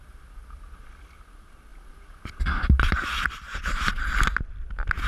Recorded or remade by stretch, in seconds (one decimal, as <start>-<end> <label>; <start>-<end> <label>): 0.0-5.1 recorded